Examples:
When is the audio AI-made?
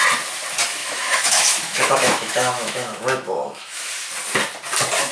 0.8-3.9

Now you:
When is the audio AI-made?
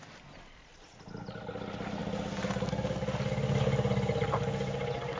none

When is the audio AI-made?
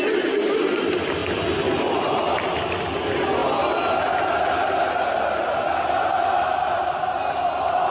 none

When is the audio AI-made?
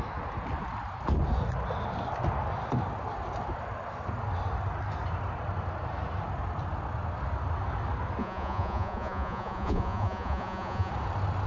8.2-10.9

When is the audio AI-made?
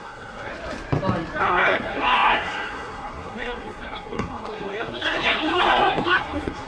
0.0-0.5; 1.4-6.7